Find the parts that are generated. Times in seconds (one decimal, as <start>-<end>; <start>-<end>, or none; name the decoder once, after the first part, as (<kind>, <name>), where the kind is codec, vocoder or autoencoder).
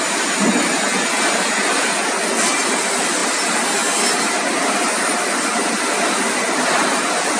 none